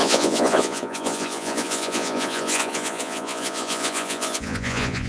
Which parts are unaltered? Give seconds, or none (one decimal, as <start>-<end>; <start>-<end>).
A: none